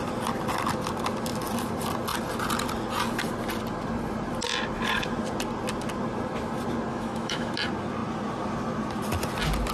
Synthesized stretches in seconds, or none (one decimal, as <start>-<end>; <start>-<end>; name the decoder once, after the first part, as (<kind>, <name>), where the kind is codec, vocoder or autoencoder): 6.9-7.5 (autoencoder, DAC-VAE)